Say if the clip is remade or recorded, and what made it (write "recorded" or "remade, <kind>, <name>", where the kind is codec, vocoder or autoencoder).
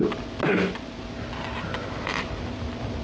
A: recorded